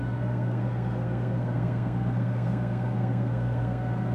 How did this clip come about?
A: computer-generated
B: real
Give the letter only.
A